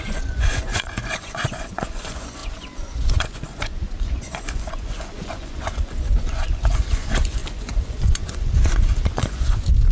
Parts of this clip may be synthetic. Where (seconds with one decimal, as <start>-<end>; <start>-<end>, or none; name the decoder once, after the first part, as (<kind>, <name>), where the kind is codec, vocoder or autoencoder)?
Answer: 0.0-9.9 (vocoder, Vocos)